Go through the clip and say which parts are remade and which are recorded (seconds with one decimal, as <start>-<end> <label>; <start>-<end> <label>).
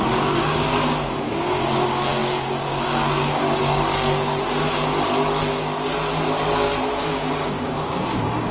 0.0-4.9 remade; 4.9-7.0 recorded; 7.0-8.5 remade